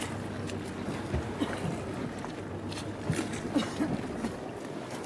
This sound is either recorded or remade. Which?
recorded